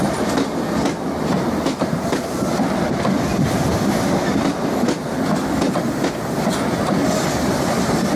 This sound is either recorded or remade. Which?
recorded